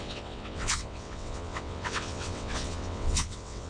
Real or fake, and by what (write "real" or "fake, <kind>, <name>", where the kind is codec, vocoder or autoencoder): fake, vocoder, WaveNeXt